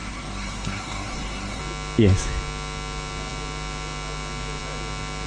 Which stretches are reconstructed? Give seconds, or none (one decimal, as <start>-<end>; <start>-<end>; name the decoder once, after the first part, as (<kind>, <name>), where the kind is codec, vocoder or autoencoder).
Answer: 0.0-1.6 (codec, SNAC)